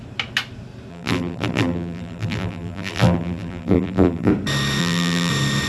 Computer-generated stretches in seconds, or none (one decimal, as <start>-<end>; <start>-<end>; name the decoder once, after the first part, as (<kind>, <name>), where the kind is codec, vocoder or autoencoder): 0.9-4.3 (vocoder, BigVGAN v2); 4.8-5.3